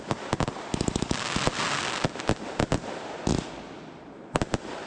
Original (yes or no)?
yes